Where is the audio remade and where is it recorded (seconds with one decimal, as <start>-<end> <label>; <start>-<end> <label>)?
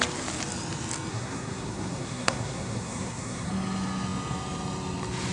0.0-1.1 recorded; 1.1-3.5 remade; 3.5-5.3 recorded